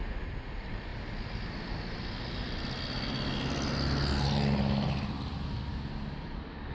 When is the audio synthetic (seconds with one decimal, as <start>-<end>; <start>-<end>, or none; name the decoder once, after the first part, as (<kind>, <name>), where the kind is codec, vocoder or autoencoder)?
none

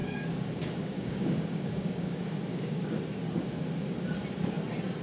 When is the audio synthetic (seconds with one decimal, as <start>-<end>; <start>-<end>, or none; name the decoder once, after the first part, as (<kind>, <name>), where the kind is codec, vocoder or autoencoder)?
0.0-3.0 (codec, DAC)

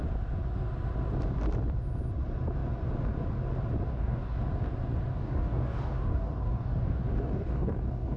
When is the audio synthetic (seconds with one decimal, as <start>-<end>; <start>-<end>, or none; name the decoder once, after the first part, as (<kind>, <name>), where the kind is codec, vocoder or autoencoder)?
3.9-4.4 (codec, DAC); 5.1-8.2

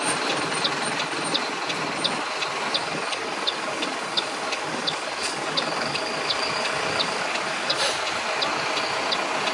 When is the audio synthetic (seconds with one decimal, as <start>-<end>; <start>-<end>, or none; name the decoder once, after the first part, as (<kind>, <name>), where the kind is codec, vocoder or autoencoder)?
2.8-7.8 (codec, DAC)

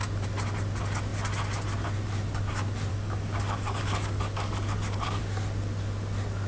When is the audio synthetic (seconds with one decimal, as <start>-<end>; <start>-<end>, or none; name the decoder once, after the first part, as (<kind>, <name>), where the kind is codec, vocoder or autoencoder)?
2.9-5.2 (codec, DAC)

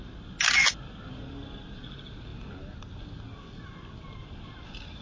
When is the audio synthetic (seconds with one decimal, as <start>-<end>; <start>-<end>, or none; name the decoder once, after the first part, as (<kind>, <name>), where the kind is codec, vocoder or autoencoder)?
none

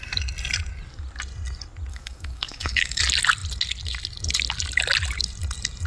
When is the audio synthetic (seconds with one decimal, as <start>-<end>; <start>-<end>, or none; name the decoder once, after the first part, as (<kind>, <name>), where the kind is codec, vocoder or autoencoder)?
1.9-3.0 (codec, DAC)

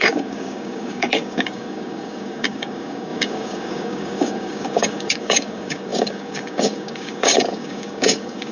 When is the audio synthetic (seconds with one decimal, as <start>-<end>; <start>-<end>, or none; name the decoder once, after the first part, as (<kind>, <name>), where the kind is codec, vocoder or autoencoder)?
0.0-8.5 (codec, DAC)